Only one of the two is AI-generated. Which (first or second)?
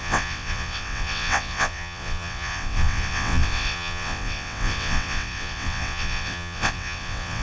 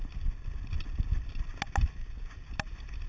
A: first